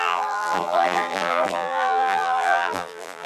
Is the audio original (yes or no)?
no